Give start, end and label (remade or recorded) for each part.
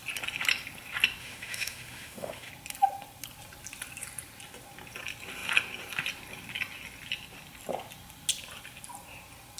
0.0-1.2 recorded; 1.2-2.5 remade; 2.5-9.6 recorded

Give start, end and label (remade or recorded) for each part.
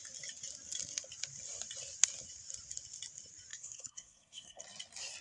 0.0-3.5 recorded; 3.5-4.6 remade; 4.6-5.2 recorded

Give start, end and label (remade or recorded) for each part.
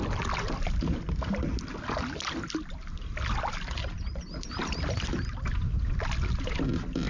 0.0-7.1 recorded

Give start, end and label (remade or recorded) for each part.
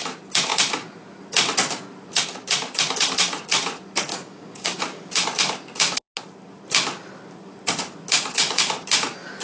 0.0-4.1 recorded; 4.1-4.8 remade; 4.8-9.4 recorded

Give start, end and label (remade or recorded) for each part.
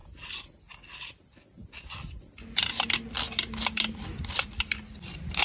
0.0-5.4 recorded